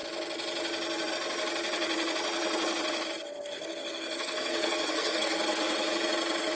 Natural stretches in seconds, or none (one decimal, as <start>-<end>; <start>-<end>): 0.0-3.2; 5.4-6.5